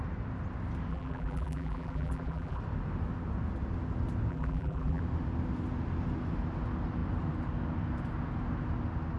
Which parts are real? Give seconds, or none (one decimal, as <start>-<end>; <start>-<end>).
0.0-0.9; 2.6-4.3; 5.0-9.2